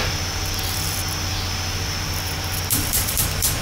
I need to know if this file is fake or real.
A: fake